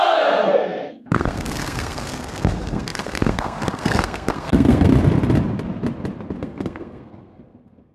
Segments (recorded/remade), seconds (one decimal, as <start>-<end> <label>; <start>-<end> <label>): 0.0-4.9 remade; 4.9-6.4 recorded; 6.4-7.9 remade